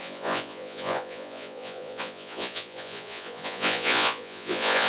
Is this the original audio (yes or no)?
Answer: no